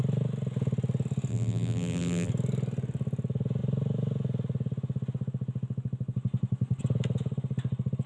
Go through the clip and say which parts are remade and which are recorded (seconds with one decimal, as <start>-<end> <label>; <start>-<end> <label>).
0.0-1.3 recorded; 1.3-2.3 remade; 2.3-8.1 recorded